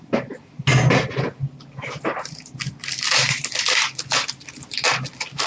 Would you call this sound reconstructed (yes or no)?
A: no